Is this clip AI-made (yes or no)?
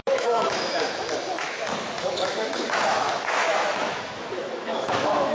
yes